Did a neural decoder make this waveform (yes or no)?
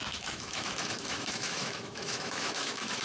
yes